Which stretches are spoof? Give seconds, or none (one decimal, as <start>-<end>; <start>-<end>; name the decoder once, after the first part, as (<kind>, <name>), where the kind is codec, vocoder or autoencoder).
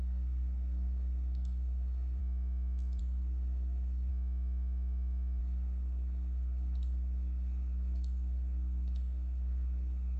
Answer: 0.0-2.2 (codec, SNAC); 3.0-4.1; 5.4-10.2